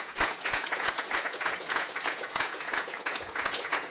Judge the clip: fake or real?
fake